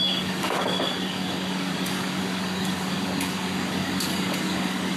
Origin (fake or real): fake